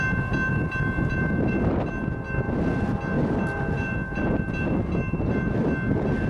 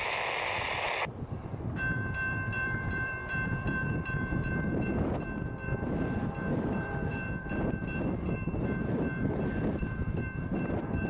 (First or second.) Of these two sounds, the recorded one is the first